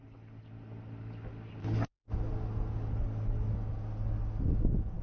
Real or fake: real